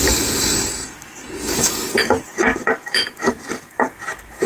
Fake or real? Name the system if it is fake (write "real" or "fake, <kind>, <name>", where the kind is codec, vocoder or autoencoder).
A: fake, codec, DAC